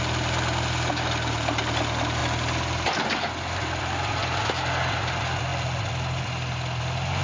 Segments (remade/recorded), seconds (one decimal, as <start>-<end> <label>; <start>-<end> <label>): 0.0-7.2 recorded